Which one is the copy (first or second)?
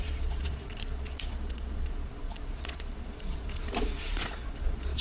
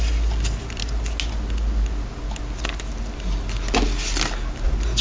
first